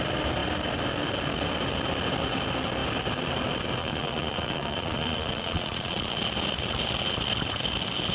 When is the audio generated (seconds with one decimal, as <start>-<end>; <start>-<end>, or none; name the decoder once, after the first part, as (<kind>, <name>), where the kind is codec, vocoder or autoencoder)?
3.8-6.2 (vocoder, Vocos)